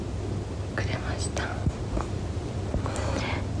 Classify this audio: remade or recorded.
recorded